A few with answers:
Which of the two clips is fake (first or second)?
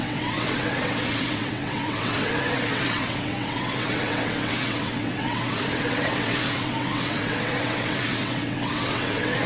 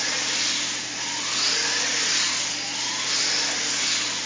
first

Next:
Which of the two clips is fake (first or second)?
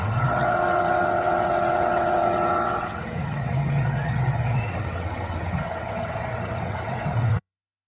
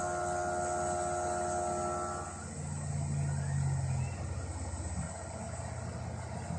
first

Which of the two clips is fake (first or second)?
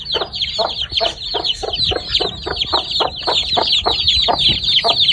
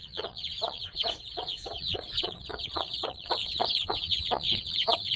second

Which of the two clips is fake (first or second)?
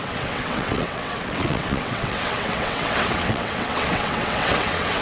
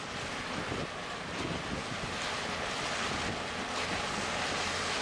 first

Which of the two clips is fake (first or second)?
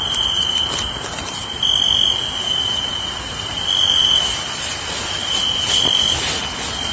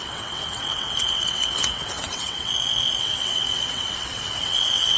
second